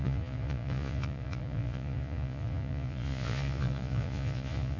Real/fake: fake